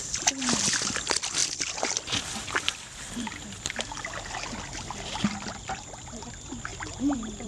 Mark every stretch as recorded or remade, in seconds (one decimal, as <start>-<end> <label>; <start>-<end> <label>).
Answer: 0.0-1.4 recorded; 1.4-4.3 remade; 4.3-6.7 recorded; 6.7-7.5 remade